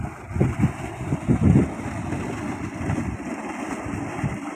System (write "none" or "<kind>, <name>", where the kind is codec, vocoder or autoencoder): none